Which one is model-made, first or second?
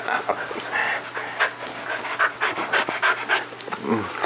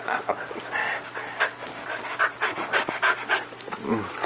second